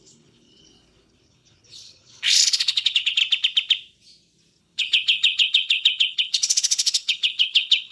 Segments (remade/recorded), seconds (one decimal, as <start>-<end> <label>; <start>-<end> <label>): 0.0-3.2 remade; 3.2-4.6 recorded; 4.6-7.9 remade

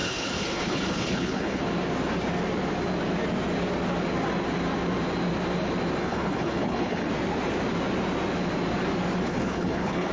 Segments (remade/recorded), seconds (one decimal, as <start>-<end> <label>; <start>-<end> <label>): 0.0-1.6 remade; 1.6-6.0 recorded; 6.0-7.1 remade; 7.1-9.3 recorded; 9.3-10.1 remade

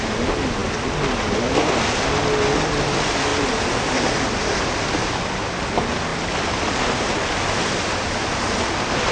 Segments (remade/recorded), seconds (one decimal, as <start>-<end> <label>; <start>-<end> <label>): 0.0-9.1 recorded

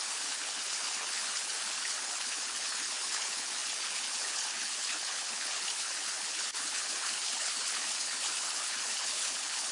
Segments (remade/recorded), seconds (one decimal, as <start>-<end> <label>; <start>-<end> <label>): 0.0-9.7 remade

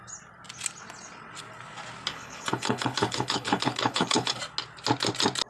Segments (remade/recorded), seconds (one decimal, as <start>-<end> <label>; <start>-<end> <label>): 0.0-2.1 recorded; 2.1-4.4 remade; 4.4-5.5 recorded

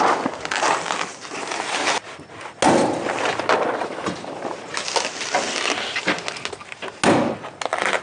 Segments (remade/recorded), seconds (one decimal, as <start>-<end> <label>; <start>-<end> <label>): 0.0-8.0 recorded

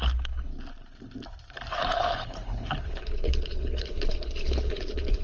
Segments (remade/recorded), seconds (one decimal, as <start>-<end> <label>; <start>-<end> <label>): 0.0-0.5 remade; 0.5-1.7 recorded; 1.7-5.2 remade